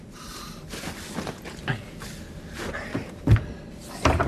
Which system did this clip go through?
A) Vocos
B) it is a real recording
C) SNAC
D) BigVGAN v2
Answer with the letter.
B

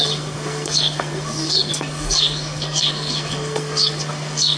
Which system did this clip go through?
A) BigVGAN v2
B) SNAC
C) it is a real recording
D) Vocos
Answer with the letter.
B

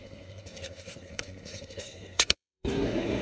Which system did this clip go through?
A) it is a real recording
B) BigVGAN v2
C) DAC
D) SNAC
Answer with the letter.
D